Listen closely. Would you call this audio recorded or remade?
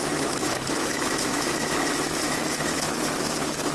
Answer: remade